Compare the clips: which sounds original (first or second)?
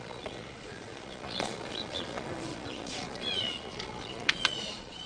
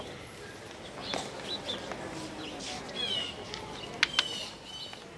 second